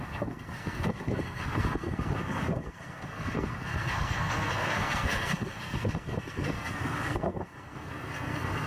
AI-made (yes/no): yes